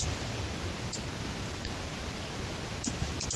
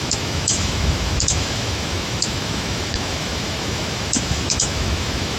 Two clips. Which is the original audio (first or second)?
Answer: first